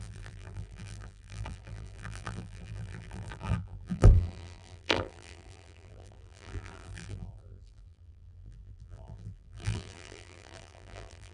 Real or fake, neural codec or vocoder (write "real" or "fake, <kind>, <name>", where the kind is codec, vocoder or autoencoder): fake, vocoder, BigVGAN v2